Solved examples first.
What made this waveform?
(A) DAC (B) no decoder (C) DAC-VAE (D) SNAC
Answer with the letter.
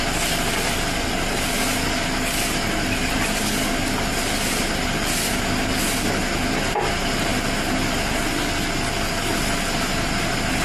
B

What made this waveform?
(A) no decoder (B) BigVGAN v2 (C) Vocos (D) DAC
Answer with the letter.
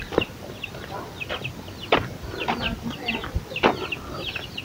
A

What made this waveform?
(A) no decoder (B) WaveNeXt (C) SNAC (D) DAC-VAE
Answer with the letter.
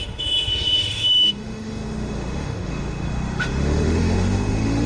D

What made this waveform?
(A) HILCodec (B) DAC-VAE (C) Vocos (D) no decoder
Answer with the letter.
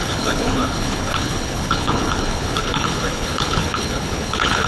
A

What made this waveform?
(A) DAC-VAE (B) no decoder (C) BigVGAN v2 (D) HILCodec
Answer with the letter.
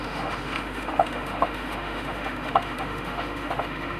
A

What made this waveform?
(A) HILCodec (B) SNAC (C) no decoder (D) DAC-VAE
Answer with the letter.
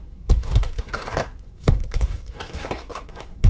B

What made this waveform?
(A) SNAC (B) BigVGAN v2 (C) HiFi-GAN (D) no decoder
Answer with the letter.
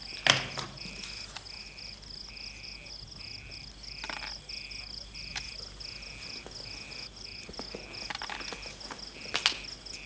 D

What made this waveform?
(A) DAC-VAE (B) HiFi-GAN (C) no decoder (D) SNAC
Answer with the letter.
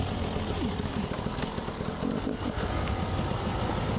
C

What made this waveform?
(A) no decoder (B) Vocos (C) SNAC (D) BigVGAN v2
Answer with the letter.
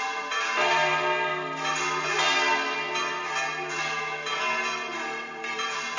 A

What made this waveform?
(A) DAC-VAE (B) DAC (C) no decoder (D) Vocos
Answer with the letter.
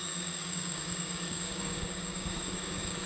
B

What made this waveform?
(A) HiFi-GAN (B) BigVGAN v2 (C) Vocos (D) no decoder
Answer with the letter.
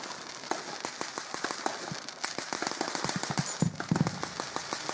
D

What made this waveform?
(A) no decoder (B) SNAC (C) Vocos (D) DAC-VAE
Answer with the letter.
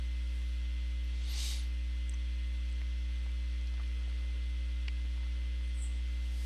A